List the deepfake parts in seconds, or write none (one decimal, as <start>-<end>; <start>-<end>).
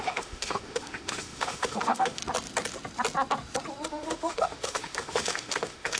0.0-2.2; 3.9-6.0